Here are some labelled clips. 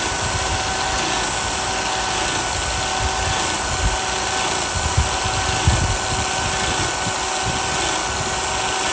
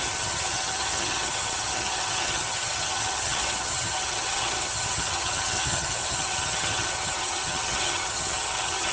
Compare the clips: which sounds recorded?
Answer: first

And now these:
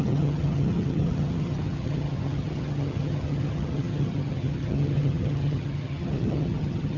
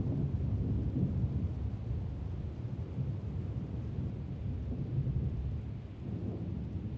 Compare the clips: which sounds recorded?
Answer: second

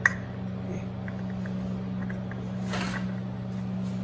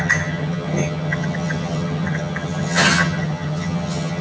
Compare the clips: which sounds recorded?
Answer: first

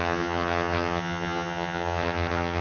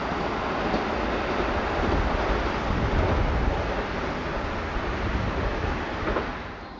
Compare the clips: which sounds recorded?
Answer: second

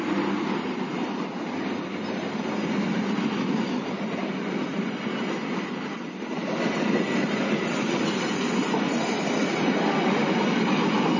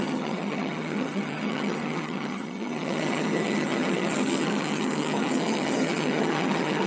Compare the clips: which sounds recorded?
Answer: first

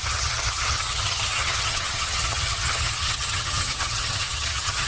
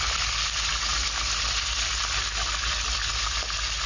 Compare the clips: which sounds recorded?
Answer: second